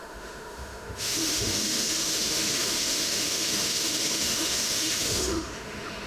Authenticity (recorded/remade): remade